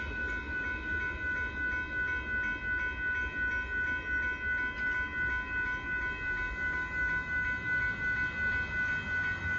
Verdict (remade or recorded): recorded